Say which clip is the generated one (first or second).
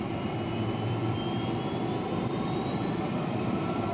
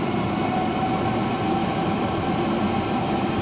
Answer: first